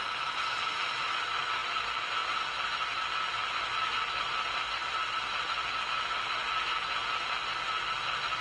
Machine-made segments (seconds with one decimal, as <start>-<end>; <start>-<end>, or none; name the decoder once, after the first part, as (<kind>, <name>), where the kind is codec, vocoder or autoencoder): none